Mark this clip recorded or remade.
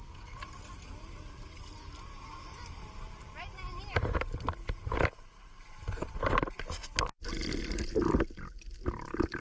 recorded